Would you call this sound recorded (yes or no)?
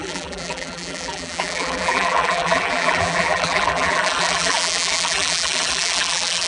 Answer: no